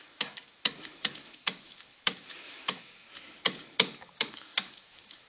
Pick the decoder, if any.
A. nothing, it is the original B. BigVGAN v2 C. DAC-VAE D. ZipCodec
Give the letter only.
C